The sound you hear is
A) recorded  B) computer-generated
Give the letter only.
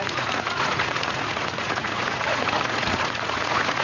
B